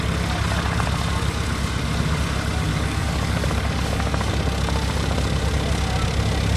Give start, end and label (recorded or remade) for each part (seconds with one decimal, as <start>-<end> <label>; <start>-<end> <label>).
0.0-2.7 recorded; 2.7-4.3 remade; 4.3-6.6 recorded